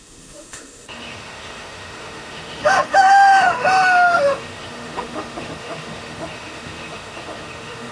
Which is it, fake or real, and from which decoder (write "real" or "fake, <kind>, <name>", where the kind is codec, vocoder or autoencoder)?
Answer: fake, autoencoder, DAC-VAE